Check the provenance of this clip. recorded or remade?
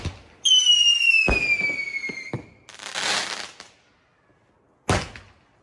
recorded